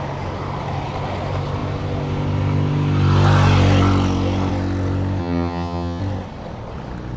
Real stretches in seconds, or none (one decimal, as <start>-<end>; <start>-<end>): 0.0-5.2; 6.0-7.2